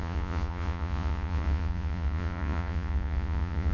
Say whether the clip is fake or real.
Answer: fake